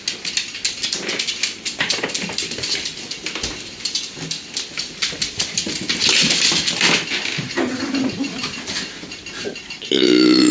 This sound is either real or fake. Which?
real